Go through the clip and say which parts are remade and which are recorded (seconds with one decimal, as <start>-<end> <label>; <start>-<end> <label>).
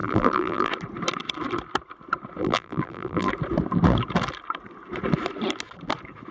0.0-0.7 remade; 0.7-2.4 recorded; 2.4-3.3 remade; 3.3-6.3 recorded